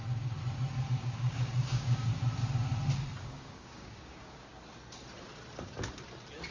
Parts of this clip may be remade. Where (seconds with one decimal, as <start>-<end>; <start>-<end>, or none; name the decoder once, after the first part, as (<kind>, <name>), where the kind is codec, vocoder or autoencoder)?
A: 0.0-0.4 (codec, DAC); 0.9-2.1; 3.2-4.5